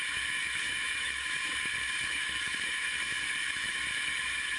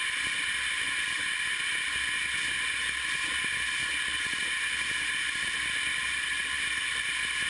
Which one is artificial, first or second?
first